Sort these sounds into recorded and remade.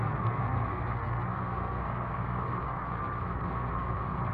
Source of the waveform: remade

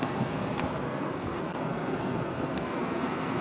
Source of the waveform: remade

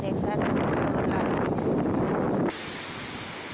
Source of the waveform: recorded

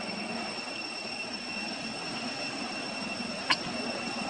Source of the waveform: recorded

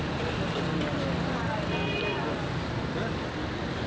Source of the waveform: recorded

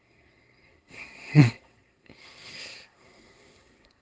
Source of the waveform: remade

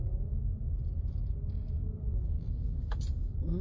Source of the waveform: recorded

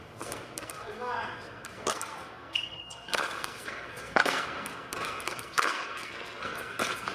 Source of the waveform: remade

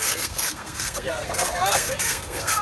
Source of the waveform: remade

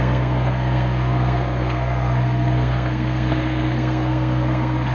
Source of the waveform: remade